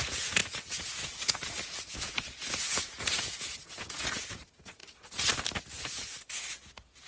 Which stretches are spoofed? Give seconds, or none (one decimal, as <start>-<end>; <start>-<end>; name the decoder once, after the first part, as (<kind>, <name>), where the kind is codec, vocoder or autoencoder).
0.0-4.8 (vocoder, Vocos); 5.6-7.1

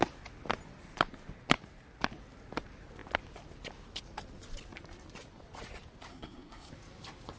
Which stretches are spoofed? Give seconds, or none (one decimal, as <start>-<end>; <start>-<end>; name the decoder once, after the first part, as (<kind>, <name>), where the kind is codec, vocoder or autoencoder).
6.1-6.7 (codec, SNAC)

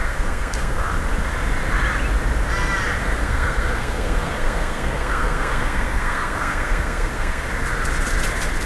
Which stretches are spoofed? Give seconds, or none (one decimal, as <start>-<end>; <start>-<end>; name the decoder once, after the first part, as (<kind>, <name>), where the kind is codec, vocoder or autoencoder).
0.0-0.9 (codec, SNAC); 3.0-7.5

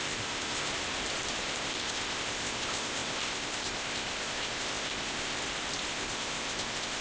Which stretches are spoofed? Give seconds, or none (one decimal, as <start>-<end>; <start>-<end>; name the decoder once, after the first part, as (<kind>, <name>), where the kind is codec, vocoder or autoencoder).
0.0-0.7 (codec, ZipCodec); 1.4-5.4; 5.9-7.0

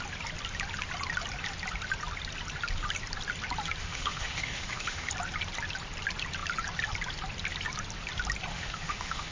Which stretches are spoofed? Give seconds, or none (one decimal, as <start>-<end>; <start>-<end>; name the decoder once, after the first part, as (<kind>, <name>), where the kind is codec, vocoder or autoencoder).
3.8-5.1 (autoencoder, DAC-VAE); 8.5-9.3

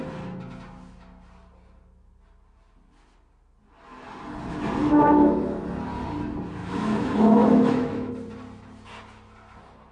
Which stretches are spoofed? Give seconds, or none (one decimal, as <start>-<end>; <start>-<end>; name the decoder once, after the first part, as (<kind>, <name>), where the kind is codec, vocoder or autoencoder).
4.8-5.6 (autoencoder, DAC-VAE); 6.6-8.1

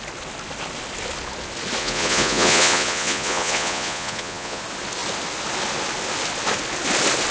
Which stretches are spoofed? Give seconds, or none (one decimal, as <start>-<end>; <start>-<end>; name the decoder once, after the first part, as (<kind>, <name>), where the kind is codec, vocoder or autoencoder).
1.8-4.6 (vocoder, Vocos)